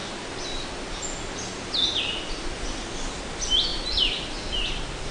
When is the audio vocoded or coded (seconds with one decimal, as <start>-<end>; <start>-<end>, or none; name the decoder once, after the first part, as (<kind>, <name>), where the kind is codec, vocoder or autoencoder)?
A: none